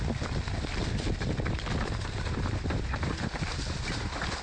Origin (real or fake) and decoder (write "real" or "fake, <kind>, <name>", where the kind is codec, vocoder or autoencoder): real